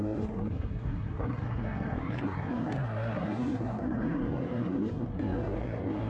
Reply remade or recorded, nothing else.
remade